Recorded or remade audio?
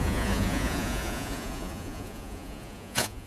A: remade